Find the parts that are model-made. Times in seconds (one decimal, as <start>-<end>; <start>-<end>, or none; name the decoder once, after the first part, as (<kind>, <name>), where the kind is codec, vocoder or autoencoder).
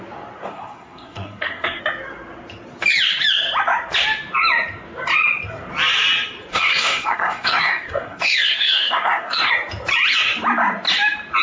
0.5-1.8 (codec, SNAC); 6.5-9.5